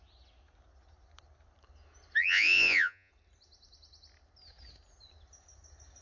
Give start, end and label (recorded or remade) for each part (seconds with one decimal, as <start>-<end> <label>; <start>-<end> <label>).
0.0-2.2 recorded; 2.2-3.1 remade; 3.1-6.0 recorded